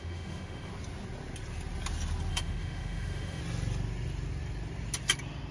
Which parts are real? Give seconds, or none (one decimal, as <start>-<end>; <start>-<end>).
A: 0.7-2.3; 3.4-5.5